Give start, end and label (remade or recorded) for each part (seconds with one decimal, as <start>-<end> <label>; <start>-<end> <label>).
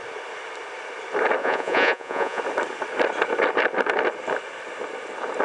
0.0-1.4 recorded; 1.4-2.4 remade; 2.4-5.4 recorded